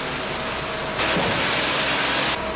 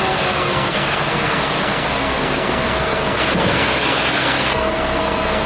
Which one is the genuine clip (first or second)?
first